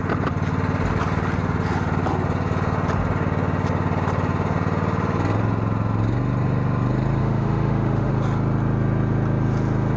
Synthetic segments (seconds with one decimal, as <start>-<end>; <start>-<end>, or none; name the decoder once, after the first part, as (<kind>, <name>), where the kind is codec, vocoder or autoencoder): 7.2-8.1 (autoencoder, DAC-VAE)